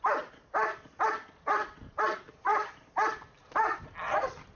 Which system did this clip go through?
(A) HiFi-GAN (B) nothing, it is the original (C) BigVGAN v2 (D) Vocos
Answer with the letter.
C